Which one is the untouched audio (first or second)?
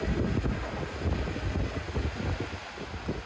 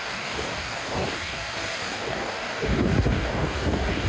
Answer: first